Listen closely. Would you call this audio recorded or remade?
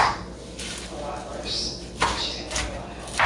recorded